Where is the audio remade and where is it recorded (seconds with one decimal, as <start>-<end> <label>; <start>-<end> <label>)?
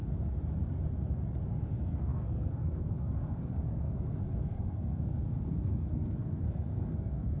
0.0-1.6 recorded; 1.6-7.4 remade